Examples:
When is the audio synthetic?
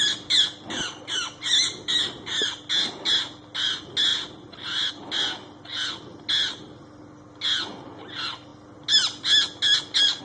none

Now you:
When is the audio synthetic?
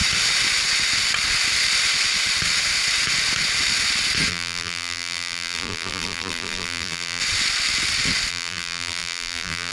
4.3-7.2; 8.3-9.7